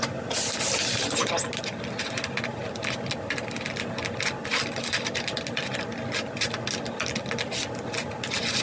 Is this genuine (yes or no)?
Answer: yes